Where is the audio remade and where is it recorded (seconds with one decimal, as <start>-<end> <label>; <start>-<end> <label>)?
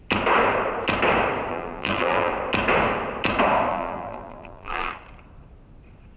0.0-1.5 recorded; 1.5-2.3 remade; 2.3-3.7 recorded; 3.7-4.9 remade; 4.9-6.2 recorded